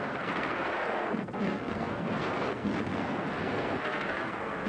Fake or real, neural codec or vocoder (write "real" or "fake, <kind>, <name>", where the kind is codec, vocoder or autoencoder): fake, codec, SNAC